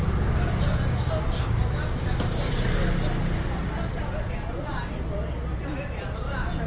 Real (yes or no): yes